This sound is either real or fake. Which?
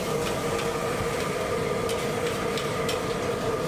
real